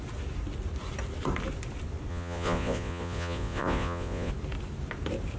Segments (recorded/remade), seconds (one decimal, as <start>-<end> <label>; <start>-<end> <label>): 0.0-2.1 recorded; 2.1-4.3 remade; 4.3-5.4 recorded